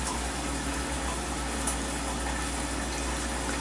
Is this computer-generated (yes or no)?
no